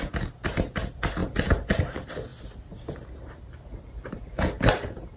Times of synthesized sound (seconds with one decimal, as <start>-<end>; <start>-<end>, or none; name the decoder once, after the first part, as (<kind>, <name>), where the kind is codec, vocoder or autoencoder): none